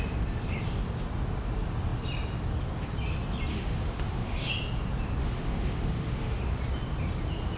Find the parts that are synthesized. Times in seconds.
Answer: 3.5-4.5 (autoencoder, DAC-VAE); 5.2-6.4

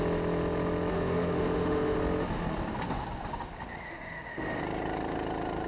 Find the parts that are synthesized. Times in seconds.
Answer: 0.9-2.0 (autoencoder, DAC-VAE); 3.9-4.6

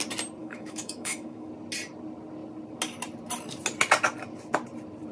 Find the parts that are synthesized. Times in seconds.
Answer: 0.4-1.5 (autoencoder, DAC-VAE)

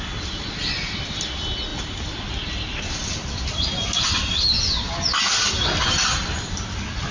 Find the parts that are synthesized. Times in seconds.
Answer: none

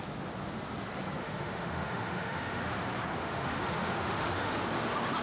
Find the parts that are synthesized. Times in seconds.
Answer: 1.2-2.7 (autoencoder, DAC-VAE); 3.2-4.6